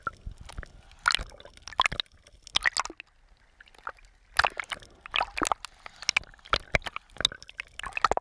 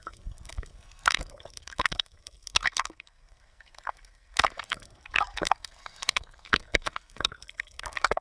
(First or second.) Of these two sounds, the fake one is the second